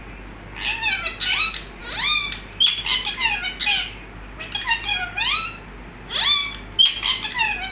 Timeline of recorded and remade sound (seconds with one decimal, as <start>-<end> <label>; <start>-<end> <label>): 0.0-7.7 recorded